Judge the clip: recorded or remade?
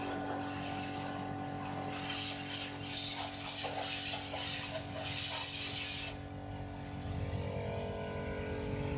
recorded